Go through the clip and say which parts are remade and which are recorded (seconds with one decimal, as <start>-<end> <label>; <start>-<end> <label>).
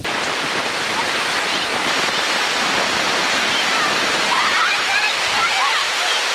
0.0-1.7 remade; 1.7-5.5 recorded; 5.5-6.3 remade